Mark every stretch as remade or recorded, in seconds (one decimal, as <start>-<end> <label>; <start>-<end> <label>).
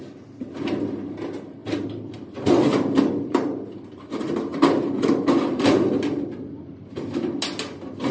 0.0-1.6 recorded; 1.6-4.0 remade; 4.0-6.3 recorded; 6.3-7.4 remade; 7.4-8.1 recorded